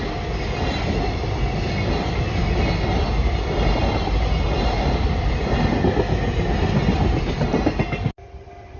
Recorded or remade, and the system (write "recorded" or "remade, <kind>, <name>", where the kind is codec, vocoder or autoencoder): recorded